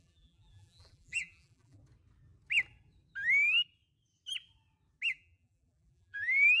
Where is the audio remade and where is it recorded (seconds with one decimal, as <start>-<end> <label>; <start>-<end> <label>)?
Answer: 0.0-1.8 remade; 1.8-5.1 recorded; 5.1-6.6 remade